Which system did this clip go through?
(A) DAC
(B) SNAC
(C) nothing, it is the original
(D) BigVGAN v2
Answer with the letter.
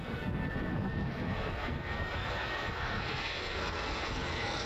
B